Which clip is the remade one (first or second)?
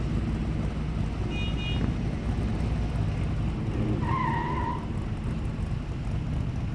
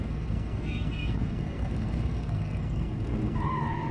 second